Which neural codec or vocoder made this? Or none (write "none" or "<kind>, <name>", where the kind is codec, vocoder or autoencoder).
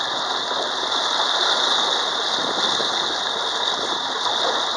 none